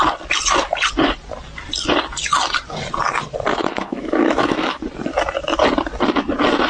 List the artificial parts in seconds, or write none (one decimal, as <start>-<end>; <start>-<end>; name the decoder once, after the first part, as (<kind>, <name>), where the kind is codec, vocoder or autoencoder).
3.5-4.8 (autoencoder, DAC-VAE)